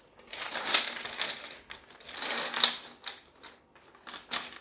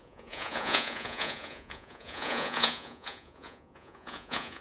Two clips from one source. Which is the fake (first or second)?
second